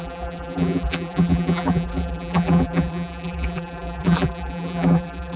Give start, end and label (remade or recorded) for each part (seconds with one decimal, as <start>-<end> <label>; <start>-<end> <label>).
0.0-5.4 remade